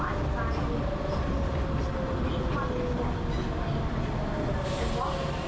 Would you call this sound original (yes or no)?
yes